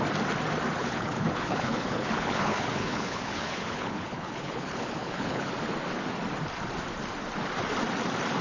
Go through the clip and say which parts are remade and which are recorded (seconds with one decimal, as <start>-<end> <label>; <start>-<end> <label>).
0.0-0.8 recorded; 0.8-5.5 remade; 5.5-8.4 recorded